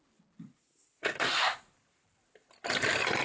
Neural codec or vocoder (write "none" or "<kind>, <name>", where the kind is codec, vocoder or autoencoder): none